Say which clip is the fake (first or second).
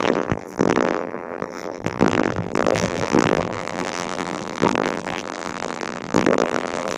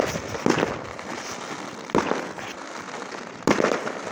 first